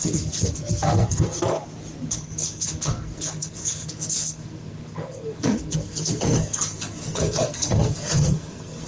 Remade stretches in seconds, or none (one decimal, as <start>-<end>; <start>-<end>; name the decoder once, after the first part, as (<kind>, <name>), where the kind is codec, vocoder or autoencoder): 0.0-1.6 (codec, SNAC); 2.1-8.9